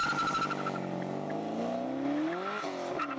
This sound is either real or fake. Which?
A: real